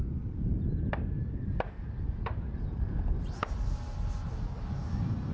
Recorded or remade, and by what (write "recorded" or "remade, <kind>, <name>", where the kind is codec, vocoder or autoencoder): recorded